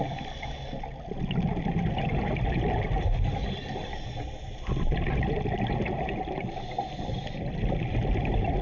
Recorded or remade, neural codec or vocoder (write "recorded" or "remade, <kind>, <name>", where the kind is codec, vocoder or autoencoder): recorded